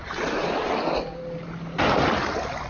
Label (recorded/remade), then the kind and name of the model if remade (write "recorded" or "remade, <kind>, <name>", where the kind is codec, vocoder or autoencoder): recorded